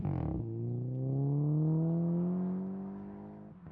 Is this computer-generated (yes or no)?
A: no